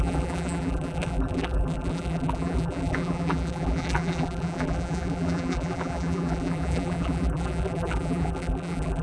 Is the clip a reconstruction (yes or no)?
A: yes